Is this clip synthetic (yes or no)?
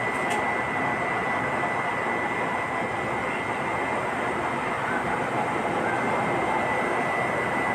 no